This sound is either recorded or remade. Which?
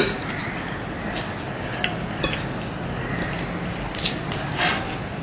recorded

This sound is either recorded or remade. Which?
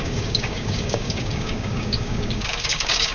remade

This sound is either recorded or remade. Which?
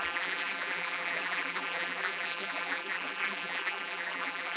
remade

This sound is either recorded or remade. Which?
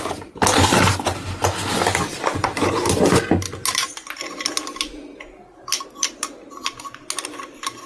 recorded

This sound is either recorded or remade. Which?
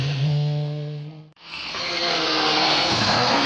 remade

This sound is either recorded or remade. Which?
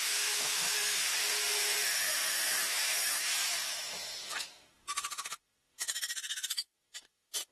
remade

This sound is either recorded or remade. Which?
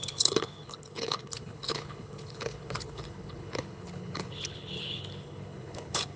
remade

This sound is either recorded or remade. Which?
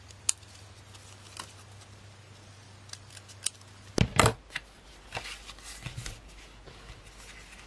recorded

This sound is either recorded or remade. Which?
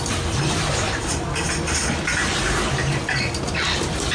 recorded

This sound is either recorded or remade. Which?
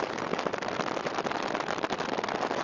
recorded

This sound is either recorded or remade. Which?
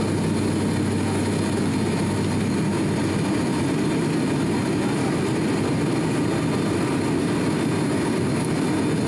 recorded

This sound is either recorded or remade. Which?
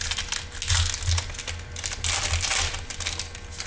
recorded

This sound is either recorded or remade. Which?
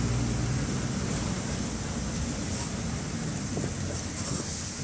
recorded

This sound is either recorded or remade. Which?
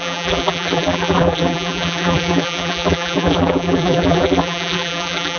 remade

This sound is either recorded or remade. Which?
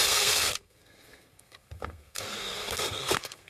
remade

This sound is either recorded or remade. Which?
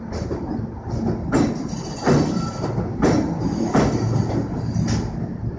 recorded